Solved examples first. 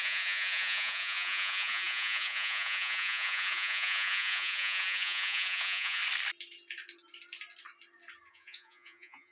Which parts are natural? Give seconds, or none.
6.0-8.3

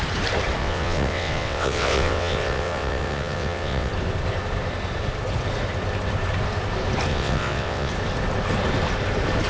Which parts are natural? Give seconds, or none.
0.0-0.6; 3.9-7.1; 7.9-9.5

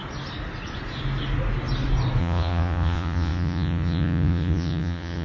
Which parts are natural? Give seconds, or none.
0.0-2.2

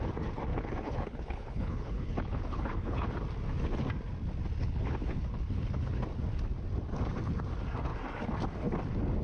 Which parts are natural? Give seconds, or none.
0.0-0.5; 3.1-4.6; 5.9-9.2

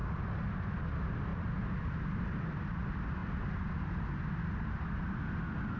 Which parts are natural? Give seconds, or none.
0.0-1.3; 1.9-5.8